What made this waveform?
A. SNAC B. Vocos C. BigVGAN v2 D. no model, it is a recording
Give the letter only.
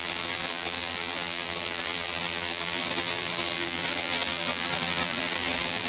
C